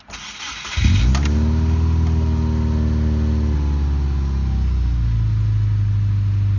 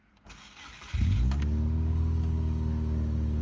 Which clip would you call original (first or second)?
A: first